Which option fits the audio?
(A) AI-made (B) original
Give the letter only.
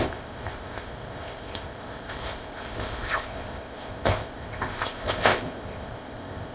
A